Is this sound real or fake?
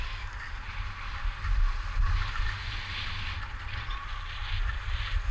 real